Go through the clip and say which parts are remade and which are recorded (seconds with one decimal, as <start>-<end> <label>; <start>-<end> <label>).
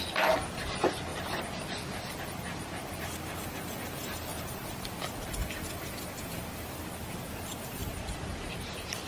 0.0-1.1 recorded; 1.1-1.8 remade; 1.8-4.3 recorded; 4.3-5.0 remade; 5.0-5.4 recorded; 5.4-7.1 remade; 7.1-7.8 recorded; 7.8-8.5 remade; 8.5-9.1 recorded